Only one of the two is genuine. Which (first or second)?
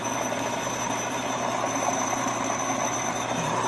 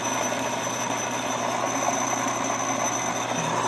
second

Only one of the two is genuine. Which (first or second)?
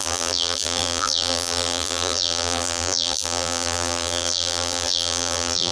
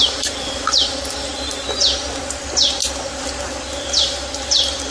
second